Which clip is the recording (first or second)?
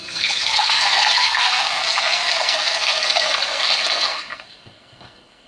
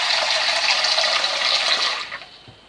second